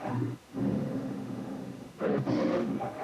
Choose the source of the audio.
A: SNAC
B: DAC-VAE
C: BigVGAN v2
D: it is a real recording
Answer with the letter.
B